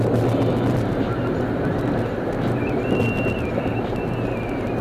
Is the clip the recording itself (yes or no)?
yes